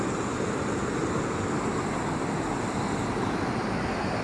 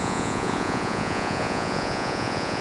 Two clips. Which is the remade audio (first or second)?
second